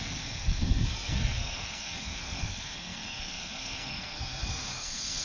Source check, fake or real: fake